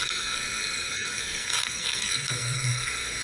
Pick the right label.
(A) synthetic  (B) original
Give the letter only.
A